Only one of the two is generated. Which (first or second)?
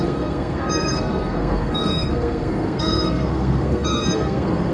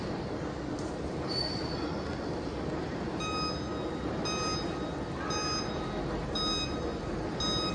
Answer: first